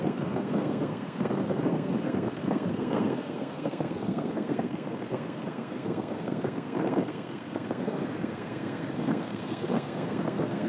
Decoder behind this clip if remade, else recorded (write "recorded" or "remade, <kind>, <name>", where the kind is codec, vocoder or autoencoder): remade, codec, SNAC